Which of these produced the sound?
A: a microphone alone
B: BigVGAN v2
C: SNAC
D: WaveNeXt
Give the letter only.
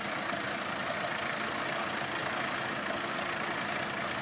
A